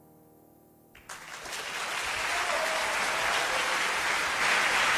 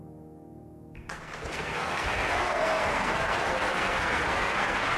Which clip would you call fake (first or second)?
second